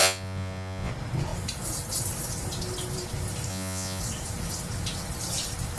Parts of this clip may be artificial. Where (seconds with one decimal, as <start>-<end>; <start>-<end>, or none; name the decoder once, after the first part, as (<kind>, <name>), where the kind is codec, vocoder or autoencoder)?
0.0-0.9 (vocoder, Vocos); 3.5-4.0